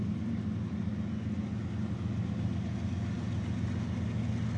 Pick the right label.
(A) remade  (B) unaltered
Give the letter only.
B